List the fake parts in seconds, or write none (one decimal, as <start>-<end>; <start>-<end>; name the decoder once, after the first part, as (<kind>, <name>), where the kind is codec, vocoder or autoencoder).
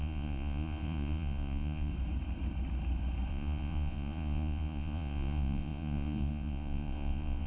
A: 0.0-1.9 (vocoder, Vocos); 3.3-7.5